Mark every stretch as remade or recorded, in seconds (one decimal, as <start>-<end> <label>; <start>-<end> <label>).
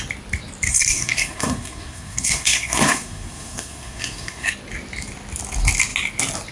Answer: 0.0-0.7 recorded; 0.7-4.5 remade; 4.5-6.5 recorded